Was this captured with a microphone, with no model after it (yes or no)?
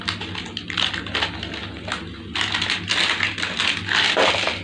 yes